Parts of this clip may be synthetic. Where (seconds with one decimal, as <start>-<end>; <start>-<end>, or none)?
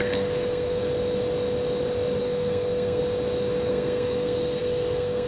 0.0-0.8; 2.2-3.0; 3.7-5.3